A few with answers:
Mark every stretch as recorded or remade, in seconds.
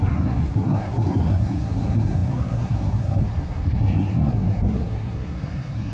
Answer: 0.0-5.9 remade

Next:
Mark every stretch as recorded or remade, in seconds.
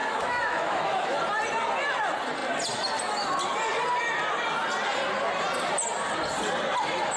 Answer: 0.0-1.2 remade; 1.2-7.2 recorded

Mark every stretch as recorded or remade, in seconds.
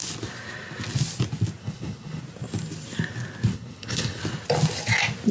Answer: 0.0-1.6 recorded; 1.6-2.2 remade; 2.2-3.5 recorded; 3.5-4.2 remade; 4.2-5.3 recorded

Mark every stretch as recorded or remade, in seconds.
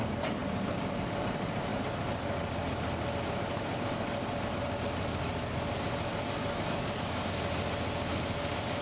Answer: 0.0-6.4 recorded; 6.4-7.3 remade; 7.3-8.8 recorded